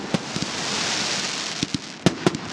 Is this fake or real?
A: real